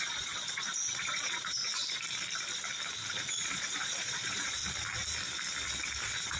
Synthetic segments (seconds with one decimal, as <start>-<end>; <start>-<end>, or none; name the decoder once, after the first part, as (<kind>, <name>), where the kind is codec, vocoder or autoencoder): 0.0-1.6 (vocoder, Vocos); 3.1-4.6; 6.0-6.4